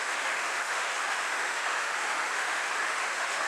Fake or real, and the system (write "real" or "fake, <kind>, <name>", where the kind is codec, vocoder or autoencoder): fake, autoencoder, DAC-VAE